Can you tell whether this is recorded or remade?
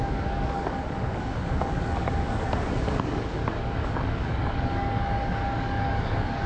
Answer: remade